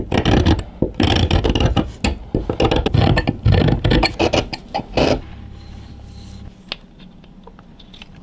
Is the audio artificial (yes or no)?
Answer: no